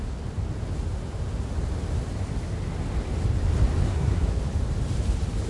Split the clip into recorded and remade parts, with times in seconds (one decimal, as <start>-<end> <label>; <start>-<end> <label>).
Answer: 0.0-3.8 recorded; 3.8-4.4 remade; 4.4-5.5 recorded